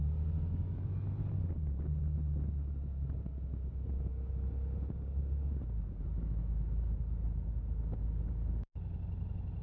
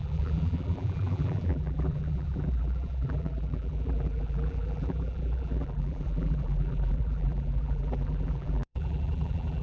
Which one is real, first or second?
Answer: first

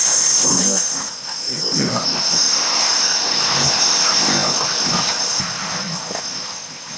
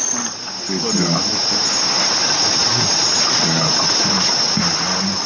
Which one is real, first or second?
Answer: second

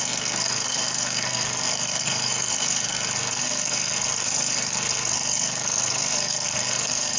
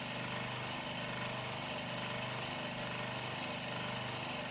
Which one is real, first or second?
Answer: second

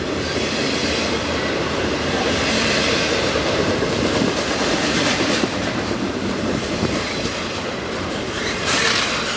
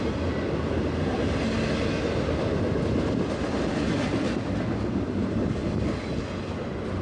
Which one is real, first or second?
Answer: second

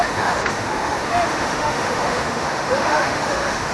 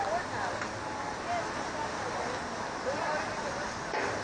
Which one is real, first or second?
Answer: second